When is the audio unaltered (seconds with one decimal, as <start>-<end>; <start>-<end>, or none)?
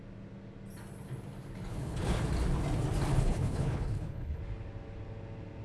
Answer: 0.0-1.7; 2.2-3.1; 4.4-5.6